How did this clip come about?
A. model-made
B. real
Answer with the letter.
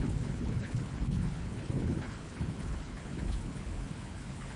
A